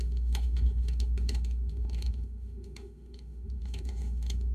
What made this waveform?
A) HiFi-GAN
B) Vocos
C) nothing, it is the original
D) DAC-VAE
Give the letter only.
D